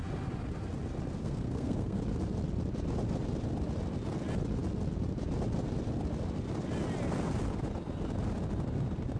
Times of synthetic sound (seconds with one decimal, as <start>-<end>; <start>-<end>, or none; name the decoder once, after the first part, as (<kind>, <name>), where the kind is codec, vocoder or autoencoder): 1.2-2.0 (codec, SNAC)